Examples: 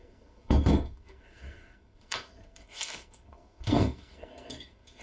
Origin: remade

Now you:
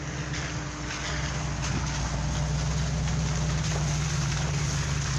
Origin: recorded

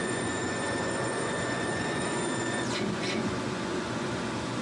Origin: remade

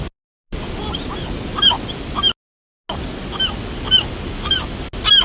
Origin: recorded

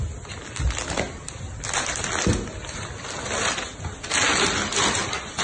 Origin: recorded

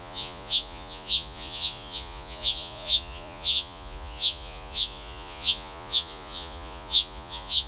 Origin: remade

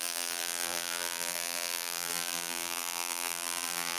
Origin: remade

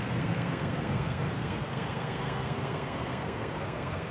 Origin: remade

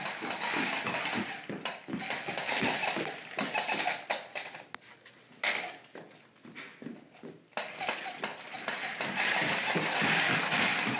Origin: recorded